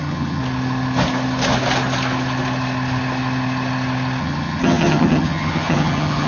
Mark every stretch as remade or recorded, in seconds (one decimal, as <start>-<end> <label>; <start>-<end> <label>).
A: 0.0-0.4 remade; 0.4-4.2 recorded; 4.2-6.3 remade